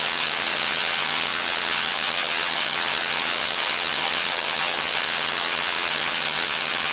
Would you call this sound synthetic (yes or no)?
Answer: yes